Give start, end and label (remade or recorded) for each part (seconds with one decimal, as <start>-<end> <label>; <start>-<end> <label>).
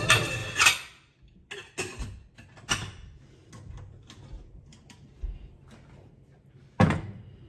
0.0-4.7 recorded; 4.7-5.3 remade; 5.3-7.5 recorded